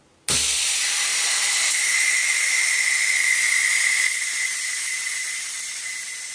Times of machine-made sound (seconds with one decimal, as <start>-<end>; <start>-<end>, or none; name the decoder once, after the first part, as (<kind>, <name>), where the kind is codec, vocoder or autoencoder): none

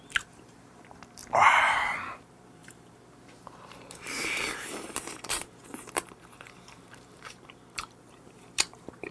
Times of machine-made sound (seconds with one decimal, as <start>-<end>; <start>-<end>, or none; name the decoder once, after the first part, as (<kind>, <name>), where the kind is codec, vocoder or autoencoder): 0.0-1.2 (vocoder, BigVGAN v2); 2.1-9.1

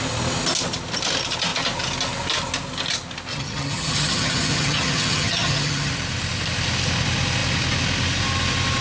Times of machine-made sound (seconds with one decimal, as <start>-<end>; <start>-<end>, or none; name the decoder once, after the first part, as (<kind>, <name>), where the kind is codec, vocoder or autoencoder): 3.3-5.9 (vocoder, HiFi-GAN)

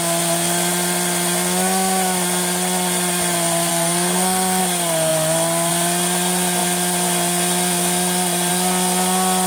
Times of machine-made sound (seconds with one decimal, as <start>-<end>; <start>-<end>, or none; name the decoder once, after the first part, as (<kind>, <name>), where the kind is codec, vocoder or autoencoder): 3.7-4.6 (codec, SNAC)

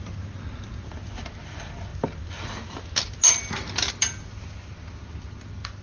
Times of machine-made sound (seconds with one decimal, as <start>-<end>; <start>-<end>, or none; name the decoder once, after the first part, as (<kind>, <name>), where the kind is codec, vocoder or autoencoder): none